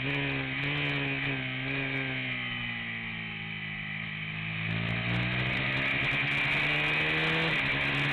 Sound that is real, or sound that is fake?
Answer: real